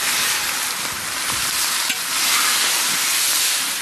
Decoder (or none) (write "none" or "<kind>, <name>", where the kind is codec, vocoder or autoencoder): none